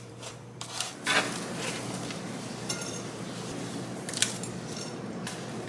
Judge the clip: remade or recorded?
remade